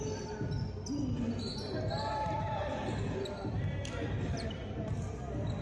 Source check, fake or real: real